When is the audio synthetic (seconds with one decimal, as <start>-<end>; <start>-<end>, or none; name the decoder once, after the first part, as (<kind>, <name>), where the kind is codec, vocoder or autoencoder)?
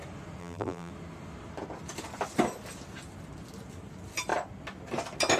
0.4-0.9 (vocoder, BigVGAN v2)